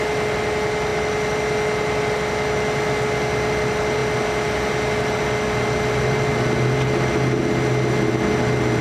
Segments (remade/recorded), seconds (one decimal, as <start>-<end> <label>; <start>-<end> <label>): 0.0-8.8 recorded